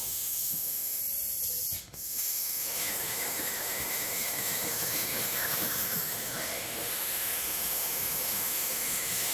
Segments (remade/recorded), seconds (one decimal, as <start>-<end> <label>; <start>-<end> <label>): 0.0-1.0 remade; 1.0-1.8 recorded; 1.8-9.3 remade